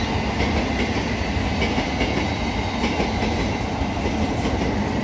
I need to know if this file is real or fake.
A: real